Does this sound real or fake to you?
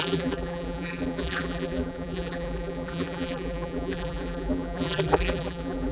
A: fake